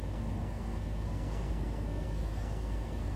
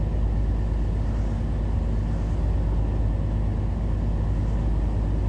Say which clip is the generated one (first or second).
first